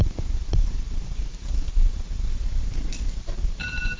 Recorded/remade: remade